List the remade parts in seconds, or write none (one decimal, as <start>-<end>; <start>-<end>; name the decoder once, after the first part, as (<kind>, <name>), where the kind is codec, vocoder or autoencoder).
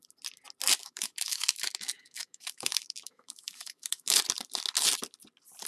0.8-4.2 (autoencoder, DAC-VAE)